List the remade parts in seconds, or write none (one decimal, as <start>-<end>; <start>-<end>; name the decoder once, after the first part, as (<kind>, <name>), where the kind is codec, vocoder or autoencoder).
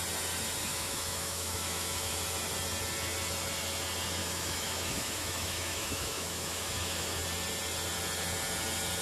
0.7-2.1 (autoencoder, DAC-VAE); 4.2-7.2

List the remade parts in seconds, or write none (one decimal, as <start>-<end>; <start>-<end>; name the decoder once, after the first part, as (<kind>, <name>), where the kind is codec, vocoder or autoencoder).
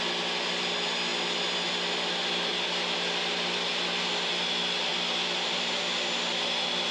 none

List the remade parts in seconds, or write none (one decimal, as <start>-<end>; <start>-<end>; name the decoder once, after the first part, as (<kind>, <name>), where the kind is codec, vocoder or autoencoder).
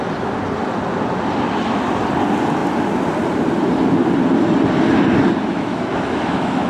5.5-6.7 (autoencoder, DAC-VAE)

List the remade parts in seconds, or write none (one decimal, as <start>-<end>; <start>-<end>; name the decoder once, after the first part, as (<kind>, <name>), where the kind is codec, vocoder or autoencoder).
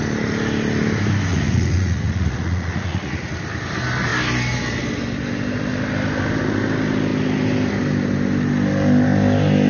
1.3-3.3 (vocoder, Vocos)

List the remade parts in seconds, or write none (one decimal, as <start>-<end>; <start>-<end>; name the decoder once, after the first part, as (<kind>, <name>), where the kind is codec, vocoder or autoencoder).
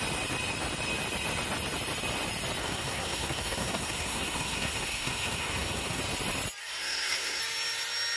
2.6-6.0 (codec, SNAC); 6.6-7.4